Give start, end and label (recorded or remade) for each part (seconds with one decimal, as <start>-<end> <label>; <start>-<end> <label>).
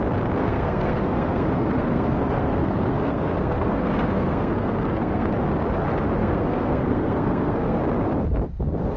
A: 0.0-0.4 recorded; 0.4-5.3 remade; 5.3-6.2 recorded; 6.2-7.8 remade; 7.8-9.0 recorded